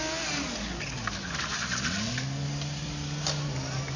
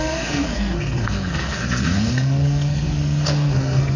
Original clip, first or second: first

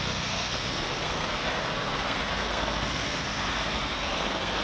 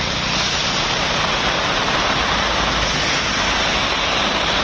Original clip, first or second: second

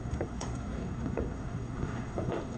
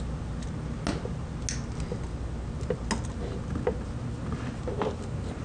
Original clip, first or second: second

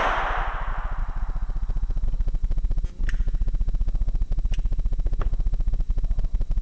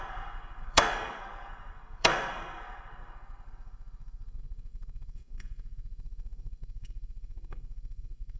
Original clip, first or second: first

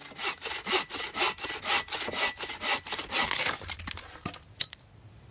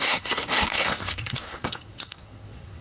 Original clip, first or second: first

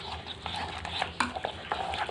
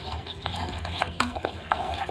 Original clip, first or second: first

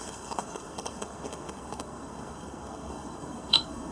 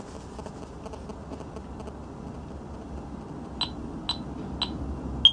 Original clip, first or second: second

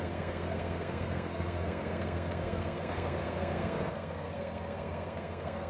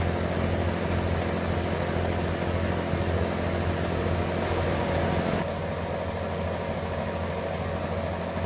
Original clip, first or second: second